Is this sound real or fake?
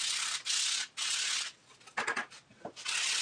real